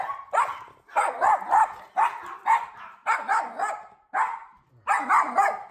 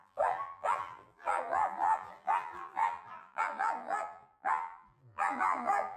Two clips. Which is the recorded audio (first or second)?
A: first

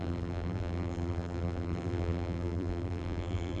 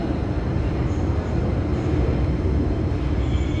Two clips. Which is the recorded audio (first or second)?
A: second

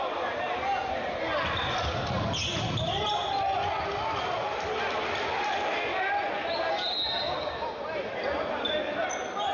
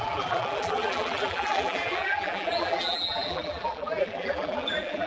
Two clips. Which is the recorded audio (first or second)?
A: first